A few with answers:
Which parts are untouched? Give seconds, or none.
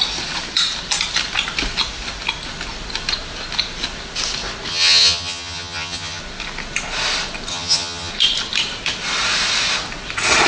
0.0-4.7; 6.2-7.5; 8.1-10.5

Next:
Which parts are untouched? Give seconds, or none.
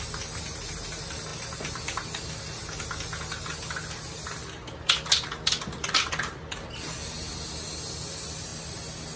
0.0-9.2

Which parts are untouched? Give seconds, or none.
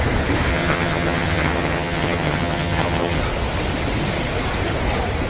0.0-0.5; 3.2-5.3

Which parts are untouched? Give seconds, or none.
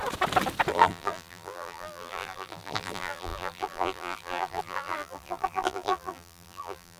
0.0-0.7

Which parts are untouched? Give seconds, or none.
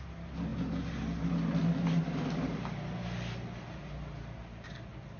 0.0-5.2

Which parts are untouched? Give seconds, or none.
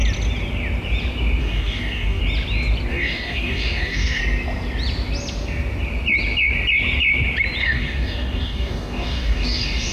0.0-1.4; 2.2-2.9; 4.2-7.6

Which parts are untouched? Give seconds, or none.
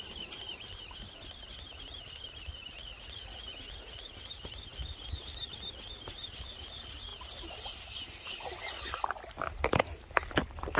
0.0-2.8; 4.1-10.8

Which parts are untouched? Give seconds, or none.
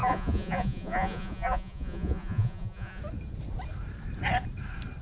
3.0-5.0